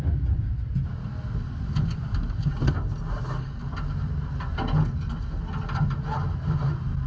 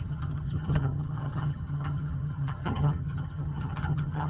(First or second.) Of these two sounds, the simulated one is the second